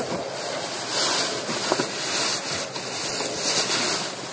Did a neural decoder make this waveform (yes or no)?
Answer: no